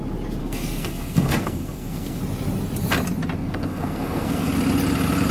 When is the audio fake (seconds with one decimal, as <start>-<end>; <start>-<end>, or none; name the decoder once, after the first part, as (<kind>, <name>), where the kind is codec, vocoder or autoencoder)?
0.4-2.2 (codec, SNAC); 3.4-4.5